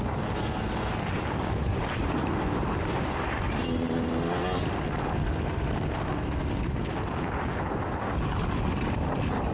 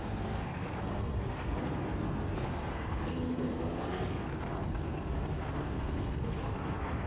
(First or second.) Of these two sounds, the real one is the first